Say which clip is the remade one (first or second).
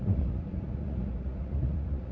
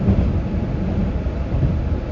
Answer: first